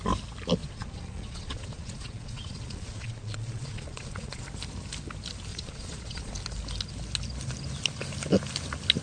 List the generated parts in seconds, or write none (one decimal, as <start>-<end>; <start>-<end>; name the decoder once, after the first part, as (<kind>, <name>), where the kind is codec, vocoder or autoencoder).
0.6-4.4 (vocoder, Vocos); 5.5-6.3